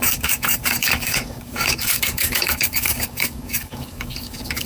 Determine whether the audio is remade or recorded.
remade